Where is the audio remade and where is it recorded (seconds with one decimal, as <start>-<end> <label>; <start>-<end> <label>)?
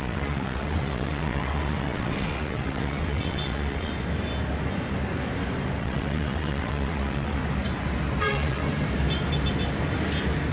0.0-3.9 remade; 3.9-5.8 recorded; 5.8-7.4 remade; 7.4-8.2 recorded; 8.2-8.6 remade; 8.6-10.5 recorded